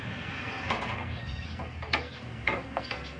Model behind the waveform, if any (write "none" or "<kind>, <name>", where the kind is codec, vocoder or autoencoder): codec, SNAC